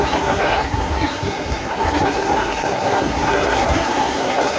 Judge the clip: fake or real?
fake